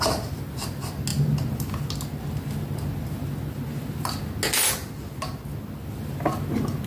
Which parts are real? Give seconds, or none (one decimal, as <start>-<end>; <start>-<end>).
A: 0.0-6.9